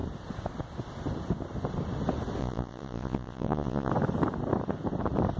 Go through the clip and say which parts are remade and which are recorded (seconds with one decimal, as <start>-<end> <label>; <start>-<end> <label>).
0.0-2.4 recorded; 2.4-3.9 remade; 3.9-5.4 recorded